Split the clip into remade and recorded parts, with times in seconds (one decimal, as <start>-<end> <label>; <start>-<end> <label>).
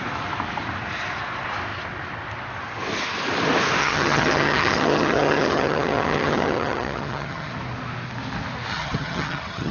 0.0-3.8 recorded; 3.8-7.5 remade; 7.5-8.7 recorded; 8.7-9.7 remade